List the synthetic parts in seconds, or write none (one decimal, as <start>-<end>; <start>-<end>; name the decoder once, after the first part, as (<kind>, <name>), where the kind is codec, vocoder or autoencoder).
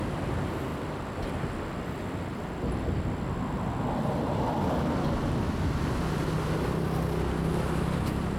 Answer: none